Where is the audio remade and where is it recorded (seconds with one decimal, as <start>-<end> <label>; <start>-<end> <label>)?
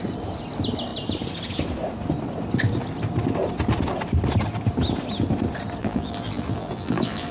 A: 0.0-5.8 recorded; 5.8-7.3 remade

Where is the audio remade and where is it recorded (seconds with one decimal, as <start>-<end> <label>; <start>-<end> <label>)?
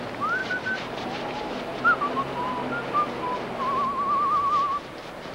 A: 0.0-0.4 recorded; 0.4-1.8 remade; 1.8-5.3 recorded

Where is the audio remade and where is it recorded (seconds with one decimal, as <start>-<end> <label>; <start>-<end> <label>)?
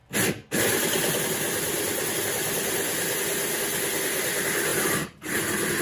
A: 0.0-4.7 recorded; 4.7-5.8 remade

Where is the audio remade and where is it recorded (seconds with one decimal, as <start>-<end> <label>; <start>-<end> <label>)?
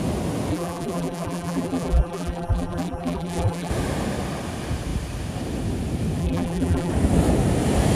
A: 0.0-0.5 recorded; 0.5-3.7 remade; 3.7-6.2 recorded; 6.2-6.9 remade; 6.9-7.9 recorded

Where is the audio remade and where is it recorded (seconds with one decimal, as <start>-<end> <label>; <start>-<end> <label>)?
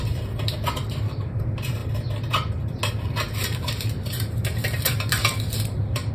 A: 0.0-1.8 remade; 1.8-2.9 recorded; 2.9-6.1 remade